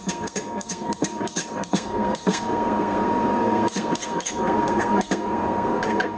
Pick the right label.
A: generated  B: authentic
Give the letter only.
A